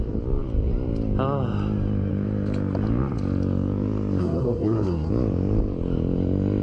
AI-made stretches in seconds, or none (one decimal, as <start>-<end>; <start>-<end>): 4.2-5.1